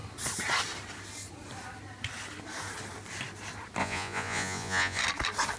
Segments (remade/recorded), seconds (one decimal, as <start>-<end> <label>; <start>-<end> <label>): 0.0-3.8 recorded; 3.8-5.0 remade; 5.0-5.6 recorded